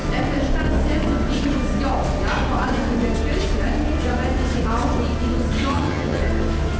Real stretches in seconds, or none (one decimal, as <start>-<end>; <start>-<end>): 0.0-5.7; 6.2-6.8